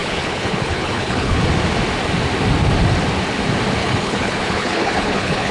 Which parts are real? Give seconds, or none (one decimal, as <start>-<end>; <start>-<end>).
1.4-3.8